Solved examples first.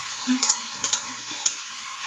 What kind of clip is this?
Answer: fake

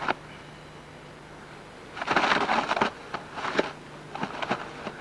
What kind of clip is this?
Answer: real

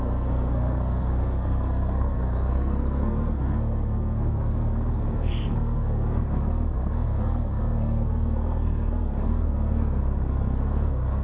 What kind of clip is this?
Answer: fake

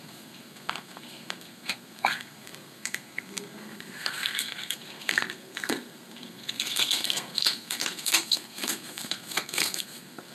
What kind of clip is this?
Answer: fake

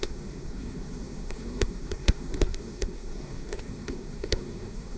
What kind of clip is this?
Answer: fake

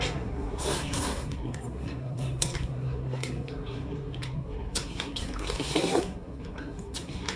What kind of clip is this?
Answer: fake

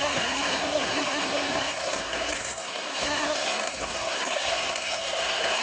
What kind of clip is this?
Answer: fake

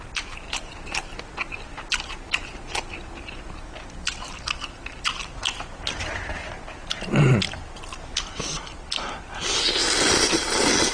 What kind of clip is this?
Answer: real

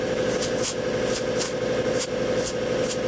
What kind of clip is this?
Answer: real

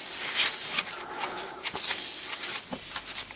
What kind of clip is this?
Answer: real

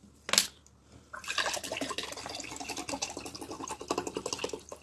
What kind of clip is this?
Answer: real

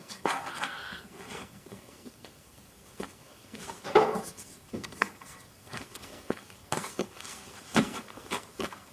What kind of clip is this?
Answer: fake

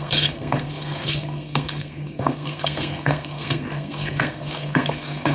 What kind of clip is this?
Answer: fake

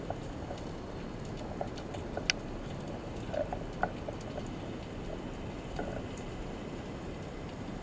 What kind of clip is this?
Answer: real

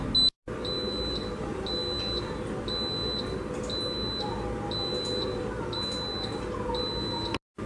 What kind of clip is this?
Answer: real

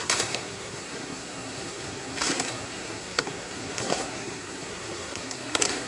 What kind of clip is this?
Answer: fake